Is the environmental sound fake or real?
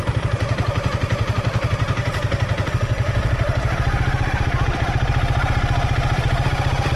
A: fake